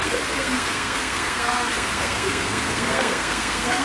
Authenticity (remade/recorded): remade